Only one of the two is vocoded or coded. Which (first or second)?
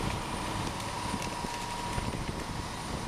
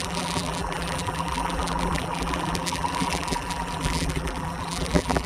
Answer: second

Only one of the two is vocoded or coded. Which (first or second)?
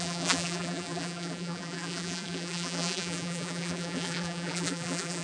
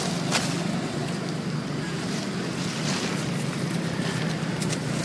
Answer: first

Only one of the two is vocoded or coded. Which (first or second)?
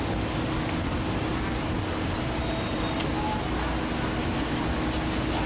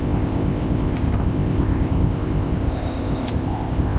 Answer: second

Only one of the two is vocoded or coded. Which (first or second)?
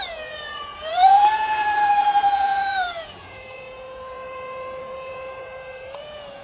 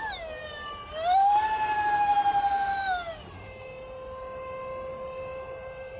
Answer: first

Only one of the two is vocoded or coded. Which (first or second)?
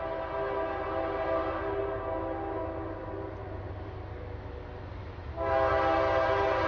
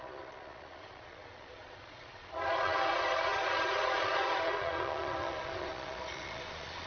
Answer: second